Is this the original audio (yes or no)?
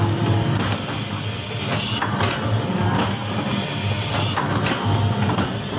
yes